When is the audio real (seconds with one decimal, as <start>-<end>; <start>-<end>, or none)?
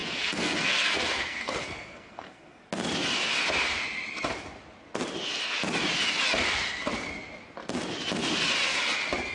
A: 2.6-9.3